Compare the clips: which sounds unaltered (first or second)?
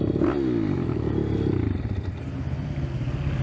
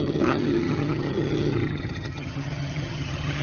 first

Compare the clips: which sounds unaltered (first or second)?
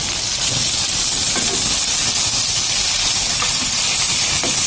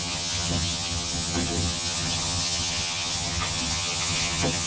first